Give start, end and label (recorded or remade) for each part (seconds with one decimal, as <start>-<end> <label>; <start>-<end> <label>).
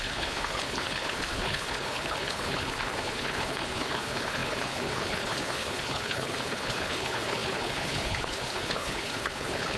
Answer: 0.0-9.8 remade